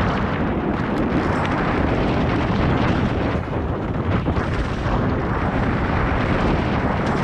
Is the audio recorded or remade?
remade